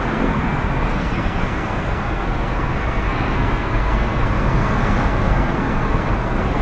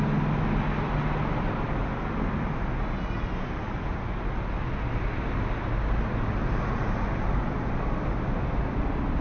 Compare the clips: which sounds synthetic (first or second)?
first